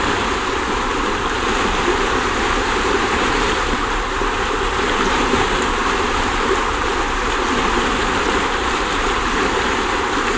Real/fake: fake